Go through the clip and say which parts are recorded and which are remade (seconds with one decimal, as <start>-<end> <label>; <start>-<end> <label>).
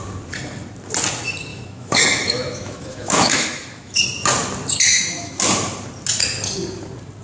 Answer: 0.0-1.5 recorded; 1.5-4.0 remade; 4.0-4.9 recorded; 4.9-5.4 remade; 5.4-7.2 recorded